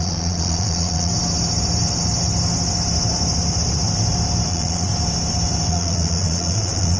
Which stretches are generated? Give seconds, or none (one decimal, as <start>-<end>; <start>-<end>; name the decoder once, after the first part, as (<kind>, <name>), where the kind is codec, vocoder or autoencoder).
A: 0.0-1.1 (vocoder, Vocos); 4.5-4.9; 5.7-7.0

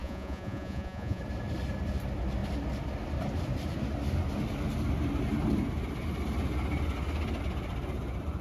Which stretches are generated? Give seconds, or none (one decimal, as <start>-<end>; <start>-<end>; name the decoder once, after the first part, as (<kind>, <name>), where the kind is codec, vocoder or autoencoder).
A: 0.0-1.2 (vocoder, Vocos)

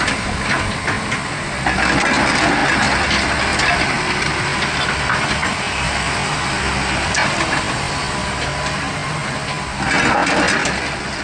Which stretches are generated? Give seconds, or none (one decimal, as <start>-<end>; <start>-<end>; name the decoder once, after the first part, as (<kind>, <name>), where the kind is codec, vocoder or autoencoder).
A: none